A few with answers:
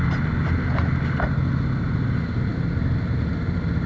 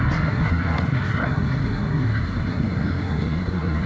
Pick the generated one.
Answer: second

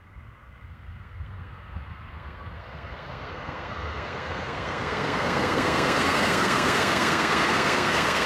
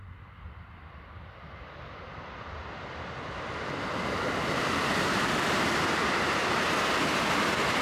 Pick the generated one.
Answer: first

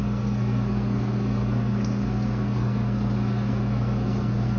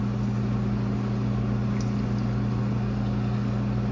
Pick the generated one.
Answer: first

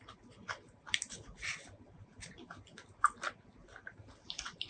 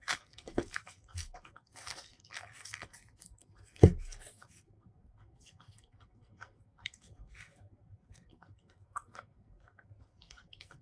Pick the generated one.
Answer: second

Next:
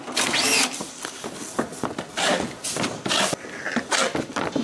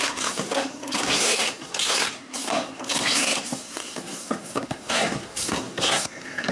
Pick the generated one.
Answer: second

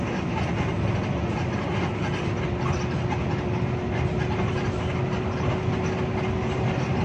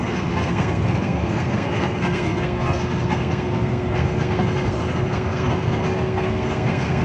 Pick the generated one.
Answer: second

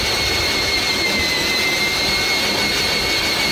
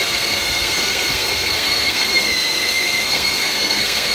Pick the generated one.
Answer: second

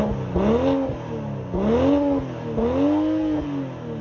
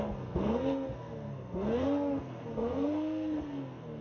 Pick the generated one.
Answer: second